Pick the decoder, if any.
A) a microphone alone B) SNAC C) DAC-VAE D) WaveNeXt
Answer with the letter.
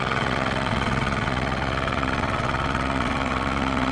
D